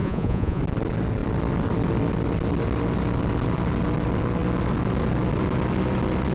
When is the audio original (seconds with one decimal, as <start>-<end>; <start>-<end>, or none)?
0.6-6.3